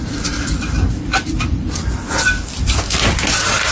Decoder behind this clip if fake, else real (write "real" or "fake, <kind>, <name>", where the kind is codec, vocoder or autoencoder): fake, vocoder, BigVGAN v2